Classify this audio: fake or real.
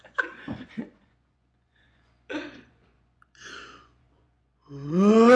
fake